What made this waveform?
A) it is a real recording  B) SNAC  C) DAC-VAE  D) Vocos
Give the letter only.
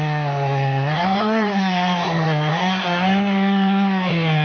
B